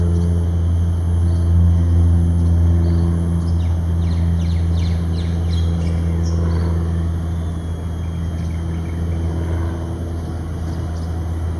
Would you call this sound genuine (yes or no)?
yes